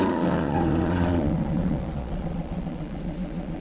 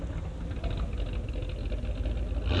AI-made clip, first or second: first